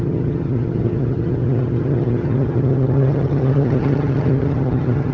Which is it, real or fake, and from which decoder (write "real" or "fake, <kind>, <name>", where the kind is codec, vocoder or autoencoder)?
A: fake, vocoder, HiFi-GAN